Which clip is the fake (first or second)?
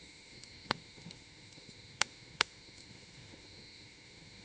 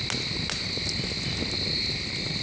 first